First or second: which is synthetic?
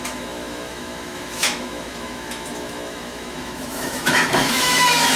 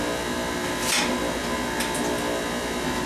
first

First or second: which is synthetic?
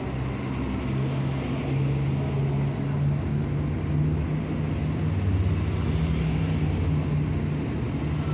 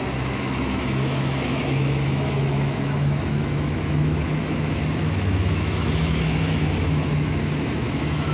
second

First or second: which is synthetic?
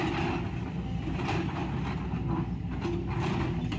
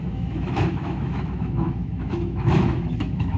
second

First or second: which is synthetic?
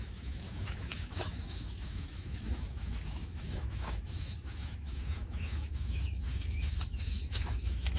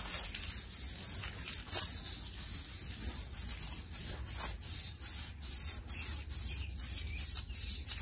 first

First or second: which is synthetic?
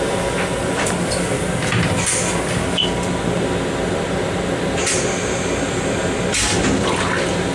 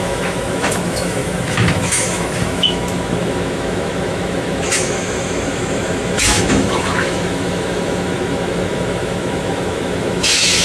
second